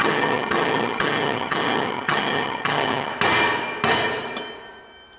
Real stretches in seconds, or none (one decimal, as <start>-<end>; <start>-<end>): 3.1-5.2